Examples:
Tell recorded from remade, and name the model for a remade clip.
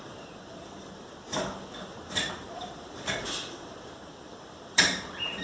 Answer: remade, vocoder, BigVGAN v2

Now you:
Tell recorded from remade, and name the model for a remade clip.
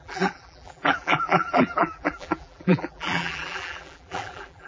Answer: remade, vocoder, BigVGAN v2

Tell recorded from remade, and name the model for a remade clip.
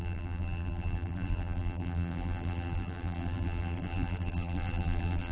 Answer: remade, vocoder, BigVGAN v2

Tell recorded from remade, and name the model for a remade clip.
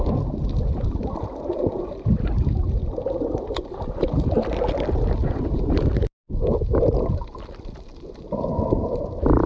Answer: recorded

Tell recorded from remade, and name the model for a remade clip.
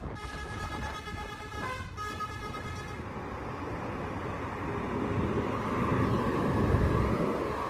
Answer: recorded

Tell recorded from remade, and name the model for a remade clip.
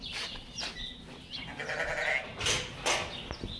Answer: recorded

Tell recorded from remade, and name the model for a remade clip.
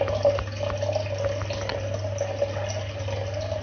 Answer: recorded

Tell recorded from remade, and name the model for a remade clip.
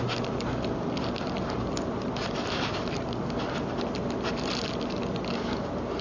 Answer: recorded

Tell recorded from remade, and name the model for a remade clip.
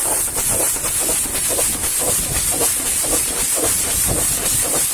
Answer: recorded